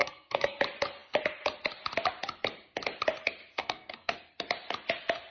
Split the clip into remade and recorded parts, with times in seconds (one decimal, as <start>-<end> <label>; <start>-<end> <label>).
0.0-0.6 remade; 0.6-3.6 recorded; 3.6-4.1 remade; 4.1-5.3 recorded